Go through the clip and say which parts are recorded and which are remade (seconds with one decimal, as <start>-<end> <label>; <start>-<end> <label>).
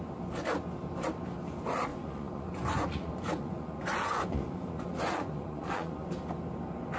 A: 0.0-1.9 recorded; 1.9-6.1 remade; 6.1-7.0 recorded